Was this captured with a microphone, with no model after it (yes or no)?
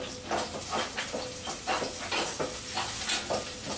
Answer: yes